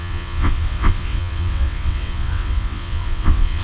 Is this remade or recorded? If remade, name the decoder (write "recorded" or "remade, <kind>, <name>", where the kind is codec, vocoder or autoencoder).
remade, vocoder, WaveNeXt